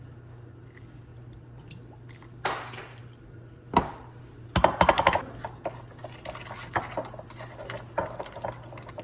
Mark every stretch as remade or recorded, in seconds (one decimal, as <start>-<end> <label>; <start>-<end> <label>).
0.0-3.0 recorded; 3.0-5.2 remade; 5.2-9.0 recorded